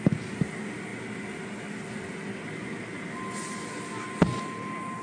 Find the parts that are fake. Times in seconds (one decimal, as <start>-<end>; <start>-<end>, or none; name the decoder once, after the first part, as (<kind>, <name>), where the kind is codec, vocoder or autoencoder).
none